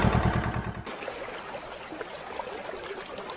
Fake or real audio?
real